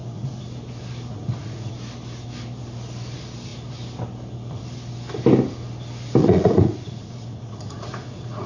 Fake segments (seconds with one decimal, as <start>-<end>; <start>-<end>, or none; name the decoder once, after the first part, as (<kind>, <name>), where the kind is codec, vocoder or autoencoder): 0.0-0.5 (vocoder, Vocos); 1.1-1.7; 6.2-8.5